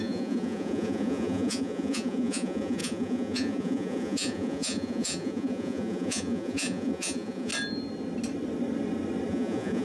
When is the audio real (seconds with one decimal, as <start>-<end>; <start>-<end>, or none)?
7.5-9.3